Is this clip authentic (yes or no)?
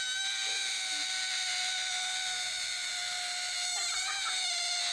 yes